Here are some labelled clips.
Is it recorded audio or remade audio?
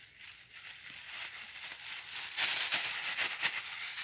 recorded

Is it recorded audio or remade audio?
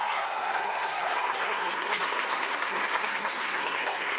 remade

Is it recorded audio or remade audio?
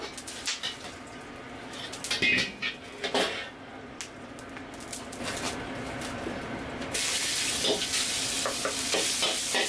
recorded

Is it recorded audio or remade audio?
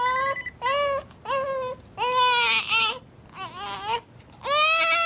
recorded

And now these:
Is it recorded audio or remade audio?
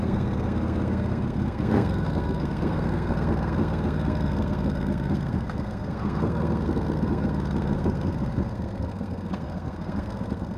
remade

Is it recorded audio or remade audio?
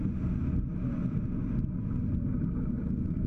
recorded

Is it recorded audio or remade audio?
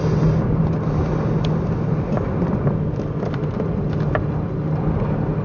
recorded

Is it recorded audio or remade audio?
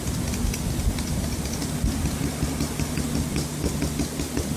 recorded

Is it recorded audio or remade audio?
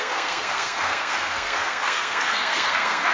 remade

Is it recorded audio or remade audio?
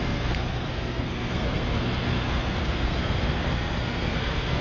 remade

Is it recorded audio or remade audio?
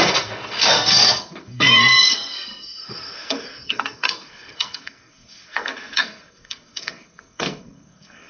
remade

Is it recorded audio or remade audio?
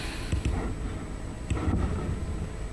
recorded